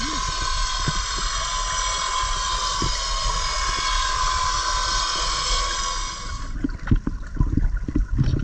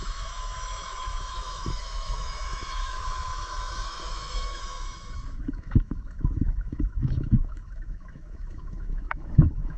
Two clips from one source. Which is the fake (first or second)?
second